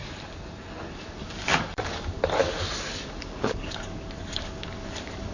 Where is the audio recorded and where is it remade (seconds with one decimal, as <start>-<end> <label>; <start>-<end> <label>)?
0.0-0.9 recorded; 0.9-2.4 remade; 2.4-3.0 recorded; 3.0-5.3 remade